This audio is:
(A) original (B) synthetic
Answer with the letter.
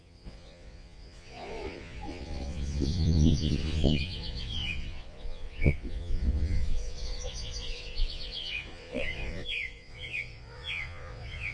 B